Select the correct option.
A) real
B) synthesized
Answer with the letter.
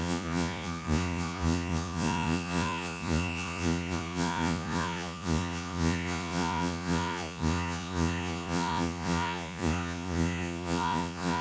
B